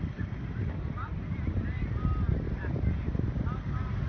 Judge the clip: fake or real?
real